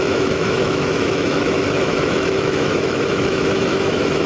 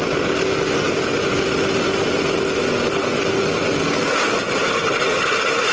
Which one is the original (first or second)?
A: second